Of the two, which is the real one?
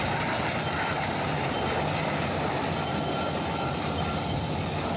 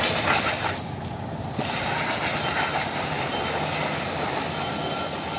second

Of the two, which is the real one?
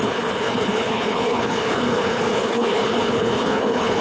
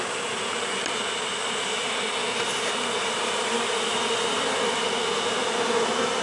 second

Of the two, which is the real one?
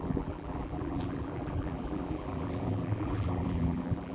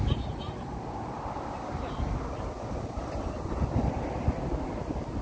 second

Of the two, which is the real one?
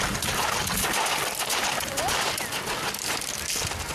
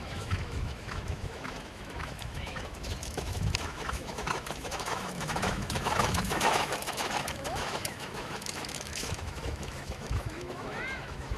first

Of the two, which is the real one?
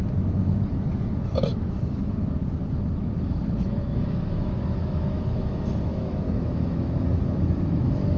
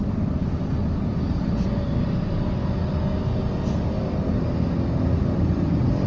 second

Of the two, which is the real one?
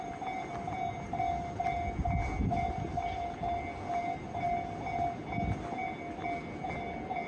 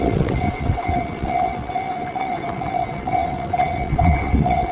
first